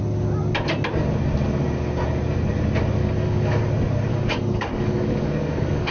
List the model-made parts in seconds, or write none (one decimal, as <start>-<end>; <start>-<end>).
3.0-3.6; 4.1-5.9